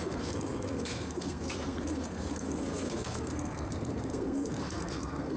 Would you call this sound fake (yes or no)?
yes